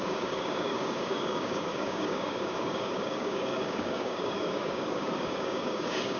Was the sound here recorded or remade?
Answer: remade